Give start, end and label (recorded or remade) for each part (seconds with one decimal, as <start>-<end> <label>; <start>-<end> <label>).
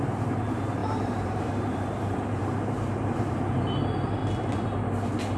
0.0-4.2 remade; 4.2-5.4 recorded